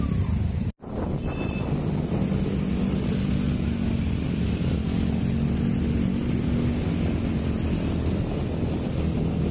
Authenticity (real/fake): real